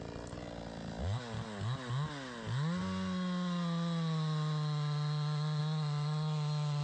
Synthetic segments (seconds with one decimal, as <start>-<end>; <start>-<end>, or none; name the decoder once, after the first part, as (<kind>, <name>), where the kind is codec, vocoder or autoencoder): none

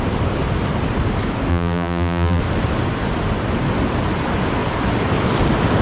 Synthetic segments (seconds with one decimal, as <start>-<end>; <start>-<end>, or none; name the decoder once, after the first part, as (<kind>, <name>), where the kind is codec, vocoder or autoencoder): 1.5-2.4 (vocoder, BigVGAN v2)

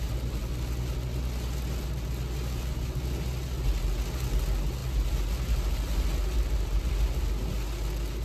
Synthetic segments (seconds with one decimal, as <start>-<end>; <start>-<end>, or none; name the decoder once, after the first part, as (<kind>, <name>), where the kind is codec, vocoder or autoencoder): none

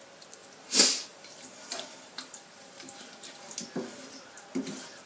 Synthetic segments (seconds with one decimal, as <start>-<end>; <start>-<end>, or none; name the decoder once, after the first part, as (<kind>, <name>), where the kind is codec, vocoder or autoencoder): 0.4-3.5 (vocoder, BigVGAN v2)

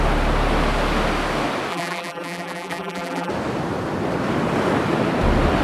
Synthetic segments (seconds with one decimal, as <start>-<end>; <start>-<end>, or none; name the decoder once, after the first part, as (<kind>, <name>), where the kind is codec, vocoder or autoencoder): 1.7-3.3 (vocoder, BigVGAN v2)

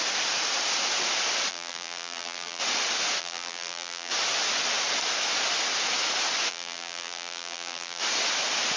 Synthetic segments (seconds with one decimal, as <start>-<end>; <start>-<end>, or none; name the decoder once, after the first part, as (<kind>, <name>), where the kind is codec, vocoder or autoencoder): 1.5-2.6 (vocoder, BigVGAN v2); 3.2-4.1; 6.5-8.0